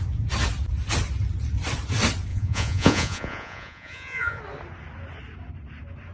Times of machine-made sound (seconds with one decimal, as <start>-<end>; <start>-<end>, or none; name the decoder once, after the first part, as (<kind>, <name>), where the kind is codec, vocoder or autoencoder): 2.3-4.4 (vocoder, Vocos)